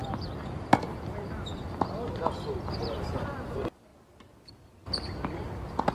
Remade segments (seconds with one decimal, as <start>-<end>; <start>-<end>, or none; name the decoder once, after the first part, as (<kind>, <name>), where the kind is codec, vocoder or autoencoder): 0.0-3.9 (vocoder, BigVGAN v2)